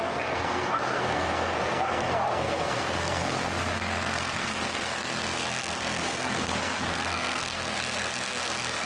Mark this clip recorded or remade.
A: remade